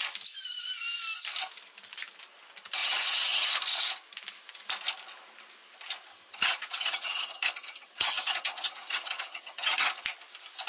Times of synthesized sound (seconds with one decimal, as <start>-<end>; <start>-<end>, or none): 2.8-3.5; 6.1-9.9